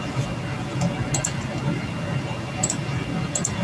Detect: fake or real real